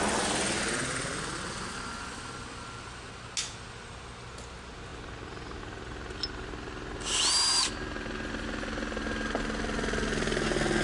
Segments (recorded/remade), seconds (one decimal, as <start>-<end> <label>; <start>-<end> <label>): 0.0-10.8 recorded